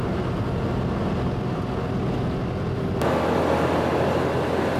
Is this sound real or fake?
real